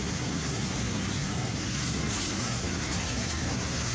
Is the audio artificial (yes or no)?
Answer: yes